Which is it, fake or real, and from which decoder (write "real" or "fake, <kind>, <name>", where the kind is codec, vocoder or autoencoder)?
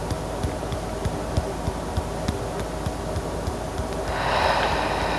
real